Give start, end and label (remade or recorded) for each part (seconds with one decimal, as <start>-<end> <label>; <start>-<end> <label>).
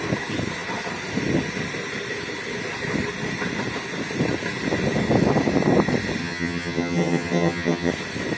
0.0-6.2 recorded; 6.2-7.9 remade; 7.9-8.4 recorded